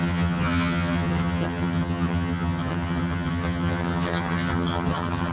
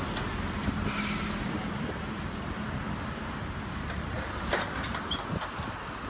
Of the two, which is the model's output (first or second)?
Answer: first